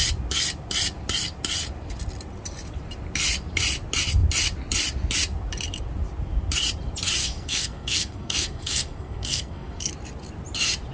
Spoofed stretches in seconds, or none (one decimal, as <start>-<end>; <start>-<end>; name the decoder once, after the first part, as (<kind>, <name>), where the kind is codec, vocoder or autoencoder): 7.2-9.9 (codec, SNAC)